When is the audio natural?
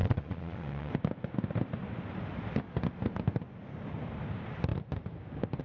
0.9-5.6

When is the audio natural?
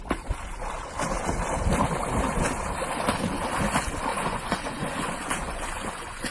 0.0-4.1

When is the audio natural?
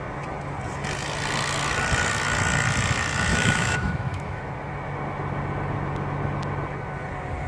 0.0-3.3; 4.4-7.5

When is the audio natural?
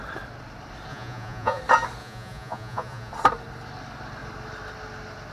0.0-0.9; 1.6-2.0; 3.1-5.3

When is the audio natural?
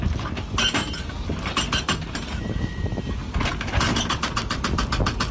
3.2-3.8